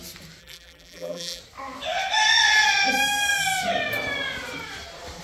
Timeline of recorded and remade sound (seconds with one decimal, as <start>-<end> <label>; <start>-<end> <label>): 0.0-0.4 recorded; 0.4-1.4 remade; 1.4-5.2 recorded